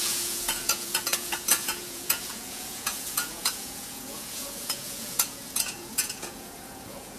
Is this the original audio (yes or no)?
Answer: no